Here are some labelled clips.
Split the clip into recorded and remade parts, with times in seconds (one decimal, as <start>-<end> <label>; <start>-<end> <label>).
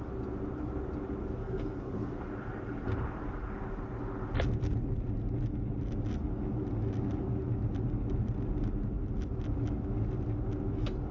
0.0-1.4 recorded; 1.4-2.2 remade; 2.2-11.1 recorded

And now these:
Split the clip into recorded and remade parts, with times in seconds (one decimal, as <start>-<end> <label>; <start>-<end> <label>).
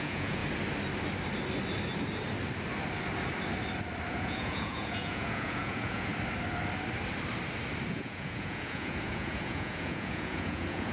0.0-0.4 remade; 0.4-4.1 recorded; 4.1-6.1 remade; 6.1-7.9 recorded; 7.9-10.9 remade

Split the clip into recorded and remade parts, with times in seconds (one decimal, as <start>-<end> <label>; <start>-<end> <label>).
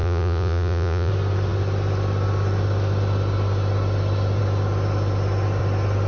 0.0-1.1 remade; 1.1-6.1 recorded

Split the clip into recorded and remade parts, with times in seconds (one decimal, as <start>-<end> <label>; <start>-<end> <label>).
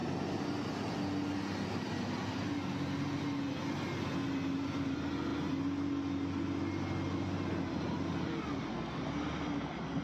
0.0-10.0 recorded